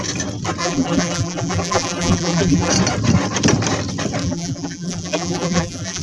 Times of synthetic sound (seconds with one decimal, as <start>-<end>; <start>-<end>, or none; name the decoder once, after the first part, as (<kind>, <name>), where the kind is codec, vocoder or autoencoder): 0.6-2.7 (vocoder, BigVGAN v2); 4.2-6.0